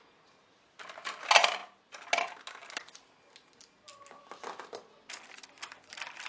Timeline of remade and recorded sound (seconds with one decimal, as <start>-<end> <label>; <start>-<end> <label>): 0.0-6.3 recorded